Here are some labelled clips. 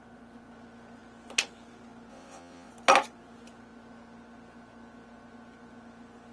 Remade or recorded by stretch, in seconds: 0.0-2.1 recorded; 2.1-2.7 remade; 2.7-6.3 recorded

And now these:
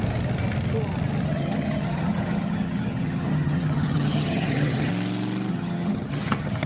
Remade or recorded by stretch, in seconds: 0.0-1.3 recorded; 1.3-4.9 remade; 4.9-5.5 recorded; 5.5-6.7 remade